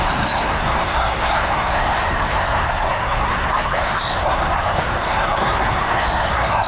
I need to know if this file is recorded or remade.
remade